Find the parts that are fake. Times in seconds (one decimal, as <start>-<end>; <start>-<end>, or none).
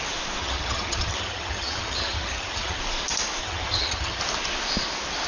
0.4-2.8; 3.4-4.2